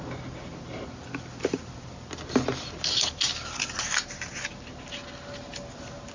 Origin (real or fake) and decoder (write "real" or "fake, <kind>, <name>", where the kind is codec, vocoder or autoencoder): real